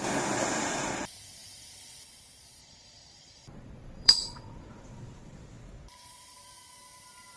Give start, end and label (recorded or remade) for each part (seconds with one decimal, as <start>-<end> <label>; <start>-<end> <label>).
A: 0.0-2.6 recorded; 2.6-5.4 remade; 5.4-7.4 recorded